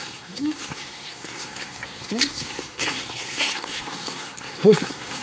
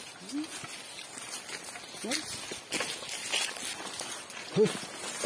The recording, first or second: second